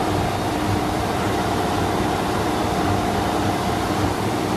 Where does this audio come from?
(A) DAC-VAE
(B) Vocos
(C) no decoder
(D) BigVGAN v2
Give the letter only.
D